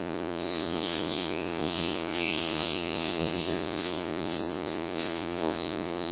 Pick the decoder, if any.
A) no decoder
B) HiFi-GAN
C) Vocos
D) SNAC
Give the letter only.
C